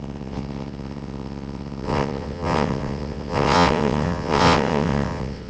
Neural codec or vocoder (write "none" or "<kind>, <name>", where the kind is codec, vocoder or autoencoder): vocoder, WaveNeXt